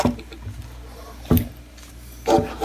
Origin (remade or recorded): recorded